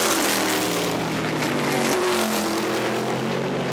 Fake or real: real